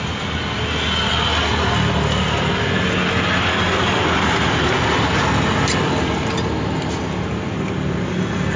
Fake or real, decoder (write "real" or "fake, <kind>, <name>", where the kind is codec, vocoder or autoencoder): real